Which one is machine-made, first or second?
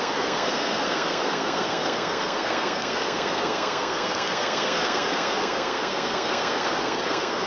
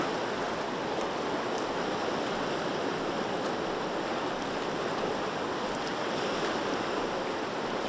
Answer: first